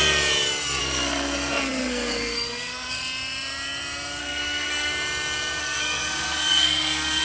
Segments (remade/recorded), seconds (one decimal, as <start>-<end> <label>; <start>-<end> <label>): 0.0-0.8 recorded; 0.8-2.9 remade; 2.9-4.2 recorded; 4.2-4.9 remade; 4.9-5.6 recorded; 5.6-7.2 remade